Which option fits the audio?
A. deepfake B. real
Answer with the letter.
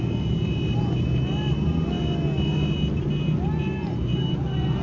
B